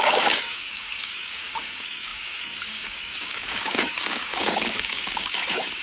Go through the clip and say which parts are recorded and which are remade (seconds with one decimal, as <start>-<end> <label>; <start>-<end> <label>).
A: 0.0-5.8 remade